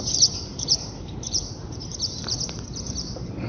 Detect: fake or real fake